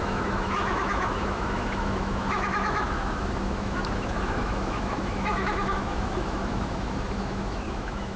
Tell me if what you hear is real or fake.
fake